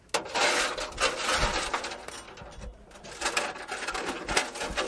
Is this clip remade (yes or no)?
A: no